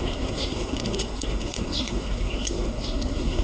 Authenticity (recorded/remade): remade